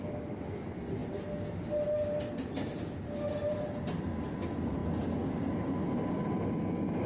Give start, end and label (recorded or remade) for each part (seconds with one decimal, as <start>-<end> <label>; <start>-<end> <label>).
0.0-7.1 recorded